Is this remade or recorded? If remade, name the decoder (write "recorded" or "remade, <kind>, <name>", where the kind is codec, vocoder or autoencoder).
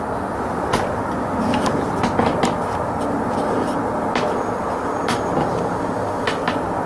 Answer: recorded